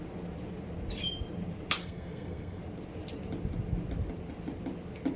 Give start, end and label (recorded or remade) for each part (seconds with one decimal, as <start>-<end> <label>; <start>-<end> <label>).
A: 0.0-1.8 recorded; 1.8-2.6 remade; 2.6-5.2 recorded